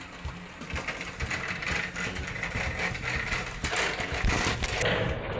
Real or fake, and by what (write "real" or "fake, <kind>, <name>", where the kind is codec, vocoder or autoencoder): real